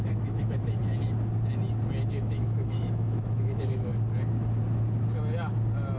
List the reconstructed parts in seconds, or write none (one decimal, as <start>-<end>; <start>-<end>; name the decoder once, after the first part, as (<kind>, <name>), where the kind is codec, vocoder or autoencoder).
0.0-0.8 (autoencoder, DAC-VAE); 2.1-3.9